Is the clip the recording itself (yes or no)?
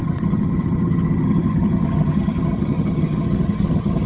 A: no